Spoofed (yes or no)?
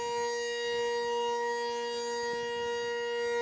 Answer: no